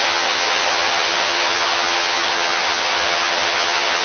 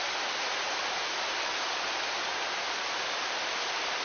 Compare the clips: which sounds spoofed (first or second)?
first